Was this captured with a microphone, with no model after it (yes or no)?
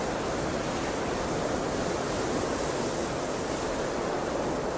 yes